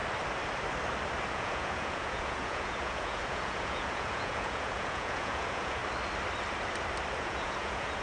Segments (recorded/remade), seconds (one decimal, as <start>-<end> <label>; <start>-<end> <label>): 0.0-1.3 recorded; 1.3-5.8 remade; 5.8-7.2 recorded; 7.2-8.0 remade